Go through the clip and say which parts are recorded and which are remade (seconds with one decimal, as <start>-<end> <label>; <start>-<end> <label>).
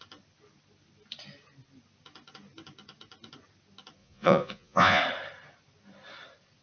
0.0-4.0 recorded; 4.0-5.0 remade; 5.0-6.6 recorded